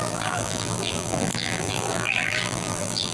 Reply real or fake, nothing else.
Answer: fake